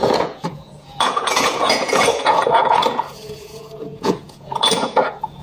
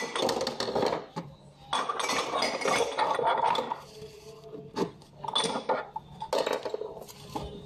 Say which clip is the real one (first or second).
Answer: second